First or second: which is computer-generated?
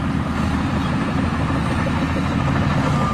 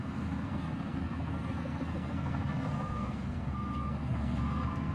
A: second